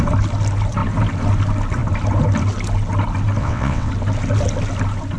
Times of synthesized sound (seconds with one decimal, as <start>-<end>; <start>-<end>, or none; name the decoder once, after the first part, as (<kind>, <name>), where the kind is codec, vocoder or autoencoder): 3.4-3.9 (vocoder, WaveNeXt)

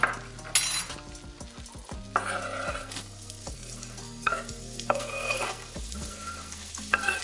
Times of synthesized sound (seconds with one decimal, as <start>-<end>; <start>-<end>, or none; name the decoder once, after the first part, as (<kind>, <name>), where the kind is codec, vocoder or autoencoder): 2.8-7.2 (codec, SNAC)